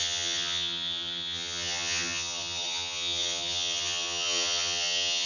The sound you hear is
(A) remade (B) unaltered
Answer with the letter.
A